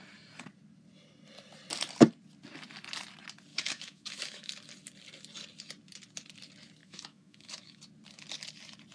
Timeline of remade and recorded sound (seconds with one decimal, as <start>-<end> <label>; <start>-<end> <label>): 0.0-3.5 recorded; 3.5-4.5 remade; 4.5-6.8 recorded; 6.8-7.8 remade; 7.8-8.9 recorded